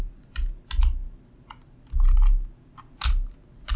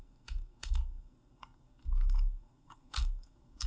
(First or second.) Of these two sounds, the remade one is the second